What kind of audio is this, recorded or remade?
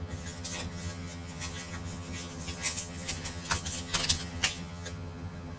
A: remade